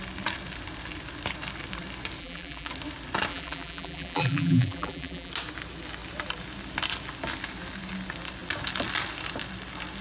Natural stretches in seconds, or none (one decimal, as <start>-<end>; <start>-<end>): 0.0-2.2; 2.7-3.3; 5.3-10.0